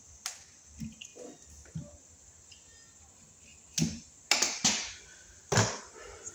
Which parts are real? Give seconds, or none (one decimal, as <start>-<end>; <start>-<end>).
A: 0.0-6.3